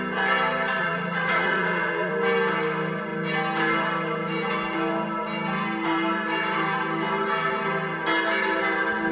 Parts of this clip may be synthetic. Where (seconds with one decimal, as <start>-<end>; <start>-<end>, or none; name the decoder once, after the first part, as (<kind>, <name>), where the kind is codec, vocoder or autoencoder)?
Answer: 0.8-2.1 (vocoder, Vocos)